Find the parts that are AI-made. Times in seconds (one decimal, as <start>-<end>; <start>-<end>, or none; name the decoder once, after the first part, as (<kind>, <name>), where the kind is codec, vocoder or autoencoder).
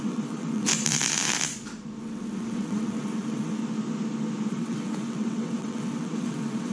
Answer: 0.0-0.7 (vocoder, WaveNeXt); 2.0-3.6; 4.5-6.7